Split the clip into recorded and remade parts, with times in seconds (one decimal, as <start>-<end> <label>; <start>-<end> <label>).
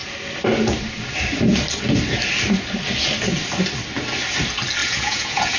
0.0-4.8 recorded; 4.8-5.6 remade